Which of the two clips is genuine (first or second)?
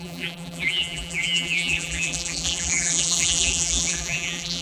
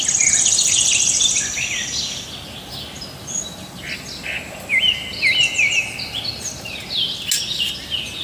second